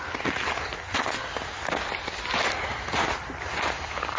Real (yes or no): yes